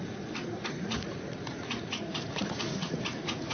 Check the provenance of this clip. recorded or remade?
remade